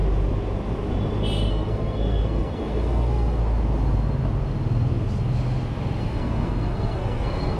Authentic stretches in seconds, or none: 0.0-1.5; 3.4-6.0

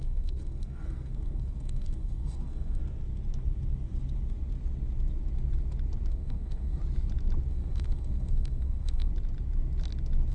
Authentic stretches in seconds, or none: 2.8-6.1; 6.8-7.5; 9.1-10.3